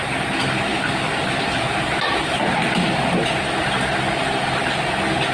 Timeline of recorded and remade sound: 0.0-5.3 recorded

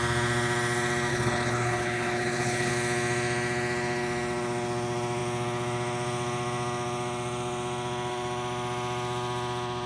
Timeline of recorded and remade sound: 0.0-1.1 recorded; 1.1-2.7 remade; 2.7-9.9 recorded

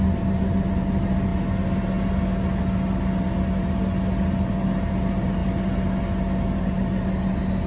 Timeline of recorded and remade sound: 0.0-7.7 recorded

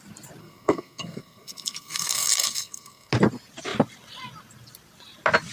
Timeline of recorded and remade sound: 0.0-0.4 recorded; 0.4-3.1 remade; 3.1-5.5 recorded

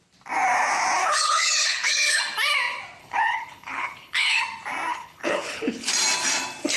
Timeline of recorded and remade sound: 0.0-1.0 recorded; 1.0-2.2 remade; 2.2-3.0 recorded; 3.0-4.4 remade; 4.4-4.9 recorded; 4.9-5.9 remade; 5.9-6.8 recorded

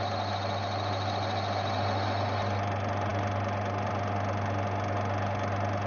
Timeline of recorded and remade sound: 0.0-5.9 recorded